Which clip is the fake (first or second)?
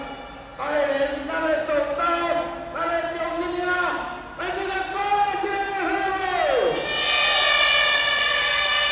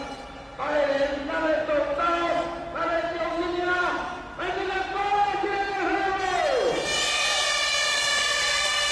second